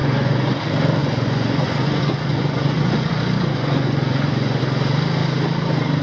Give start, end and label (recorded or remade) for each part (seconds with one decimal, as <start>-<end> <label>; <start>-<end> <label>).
0.0-0.6 remade; 0.6-1.0 recorded; 1.0-4.6 remade; 4.6-6.0 recorded